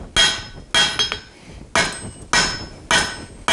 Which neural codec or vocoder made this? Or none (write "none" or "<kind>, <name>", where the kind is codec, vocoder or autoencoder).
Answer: none